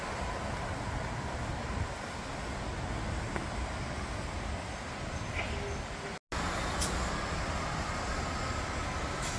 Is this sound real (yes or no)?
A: yes